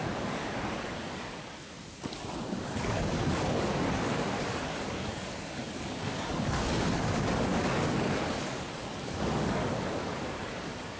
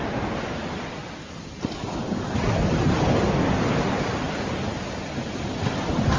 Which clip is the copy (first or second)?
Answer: first